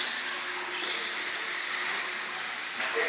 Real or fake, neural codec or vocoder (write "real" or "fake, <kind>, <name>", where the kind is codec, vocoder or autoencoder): real